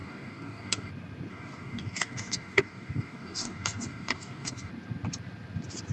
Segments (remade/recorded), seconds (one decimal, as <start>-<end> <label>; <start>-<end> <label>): 0.0-0.9 remade; 0.9-1.3 recorded; 1.3-4.7 remade; 4.7-5.9 recorded